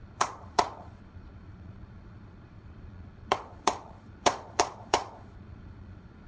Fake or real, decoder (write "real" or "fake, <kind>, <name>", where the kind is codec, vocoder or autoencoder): fake, vocoder, Vocos